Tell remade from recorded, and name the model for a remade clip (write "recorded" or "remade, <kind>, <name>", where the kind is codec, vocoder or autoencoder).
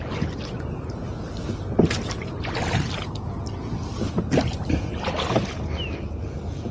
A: recorded